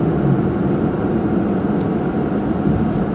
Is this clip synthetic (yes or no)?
no